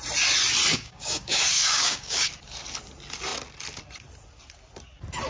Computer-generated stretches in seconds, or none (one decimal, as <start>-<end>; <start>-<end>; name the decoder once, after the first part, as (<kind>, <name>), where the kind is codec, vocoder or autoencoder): 0.7-2.3 (codec, DAC)